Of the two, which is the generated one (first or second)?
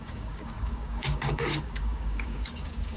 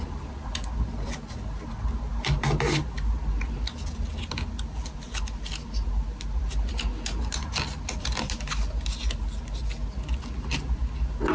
first